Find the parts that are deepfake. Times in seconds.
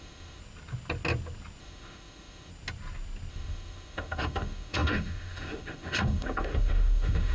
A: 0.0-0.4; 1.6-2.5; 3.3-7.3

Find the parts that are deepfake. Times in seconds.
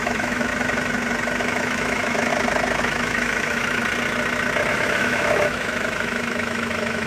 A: 0.0-0.5; 1.4-2.3; 2.8-3.8; 4.7-7.1